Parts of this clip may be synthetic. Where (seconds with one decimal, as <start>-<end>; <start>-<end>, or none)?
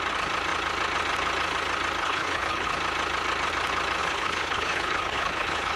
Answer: 2.0-2.7; 4.0-5.8